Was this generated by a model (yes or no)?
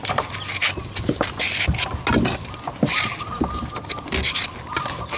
no